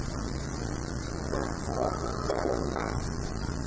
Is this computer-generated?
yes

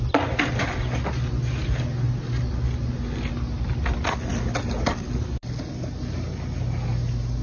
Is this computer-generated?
no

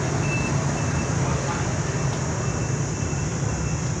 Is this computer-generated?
no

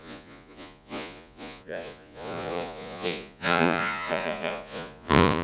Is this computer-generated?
yes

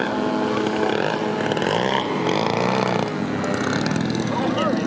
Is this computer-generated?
no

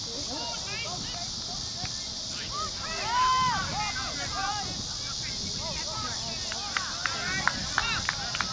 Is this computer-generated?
no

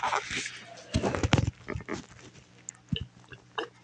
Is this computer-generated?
no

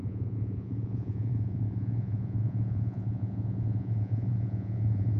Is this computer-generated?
yes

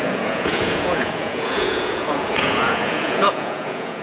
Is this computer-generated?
yes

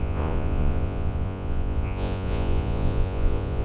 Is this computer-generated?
yes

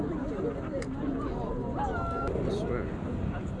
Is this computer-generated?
no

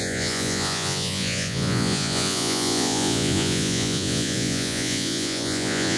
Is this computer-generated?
yes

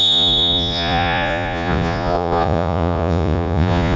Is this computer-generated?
yes